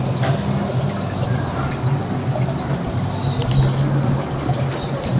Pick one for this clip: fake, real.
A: real